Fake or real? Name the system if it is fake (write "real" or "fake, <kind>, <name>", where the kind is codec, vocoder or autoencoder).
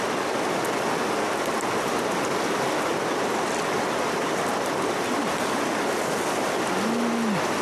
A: real